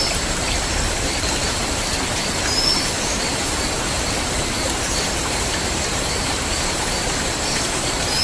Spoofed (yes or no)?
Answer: yes